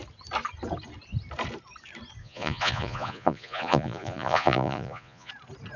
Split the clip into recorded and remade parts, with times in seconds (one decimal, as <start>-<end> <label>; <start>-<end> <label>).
0.0-2.2 recorded; 2.2-5.3 remade; 5.3-5.8 recorded